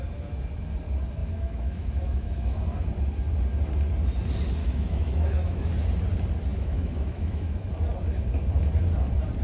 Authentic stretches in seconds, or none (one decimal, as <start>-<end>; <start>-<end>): 0.0-1.2; 2.6-4.6; 5.7-6.5; 7.7-9.4